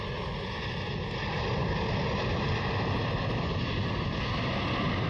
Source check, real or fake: real